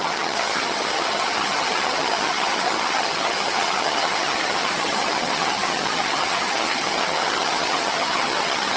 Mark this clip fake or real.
fake